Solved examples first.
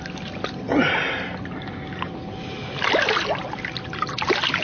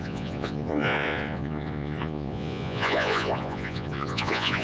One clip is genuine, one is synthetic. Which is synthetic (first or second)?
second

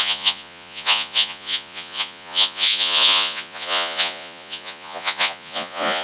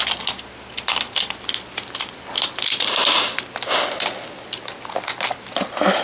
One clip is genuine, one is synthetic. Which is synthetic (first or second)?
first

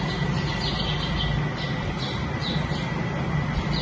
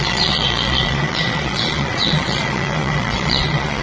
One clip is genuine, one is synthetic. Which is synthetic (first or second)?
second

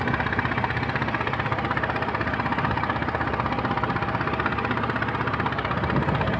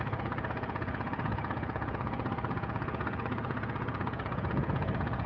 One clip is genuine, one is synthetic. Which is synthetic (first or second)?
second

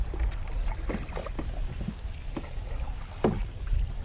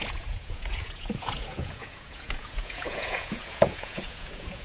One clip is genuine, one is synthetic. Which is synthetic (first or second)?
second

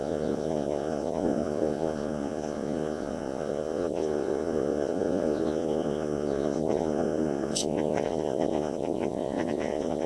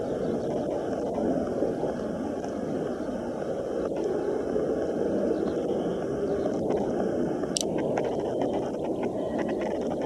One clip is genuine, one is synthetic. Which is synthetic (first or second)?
first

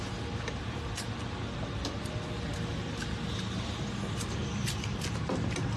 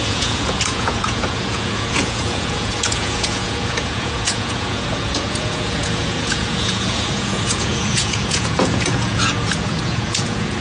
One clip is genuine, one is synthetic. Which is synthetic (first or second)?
second